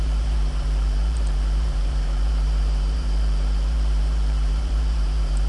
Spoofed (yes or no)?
yes